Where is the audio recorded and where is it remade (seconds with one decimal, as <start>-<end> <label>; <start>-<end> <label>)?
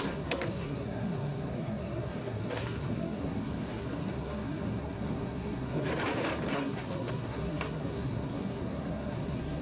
0.0-5.9 remade; 5.9-6.5 recorded; 6.5-9.6 remade